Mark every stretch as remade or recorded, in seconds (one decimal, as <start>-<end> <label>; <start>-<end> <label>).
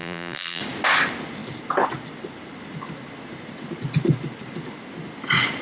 0.0-0.6 remade; 0.6-5.6 recorded